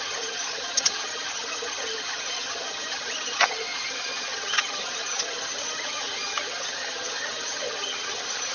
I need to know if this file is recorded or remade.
remade